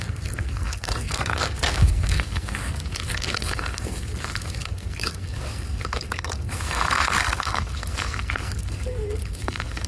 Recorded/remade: remade